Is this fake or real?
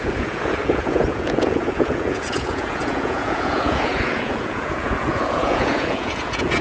fake